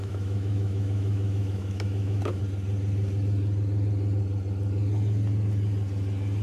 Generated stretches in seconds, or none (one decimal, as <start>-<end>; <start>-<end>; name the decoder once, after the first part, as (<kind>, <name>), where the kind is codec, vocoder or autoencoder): 0.0-2.4 (autoencoder, DAC-VAE)